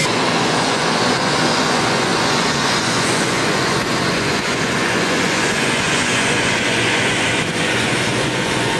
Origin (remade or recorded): remade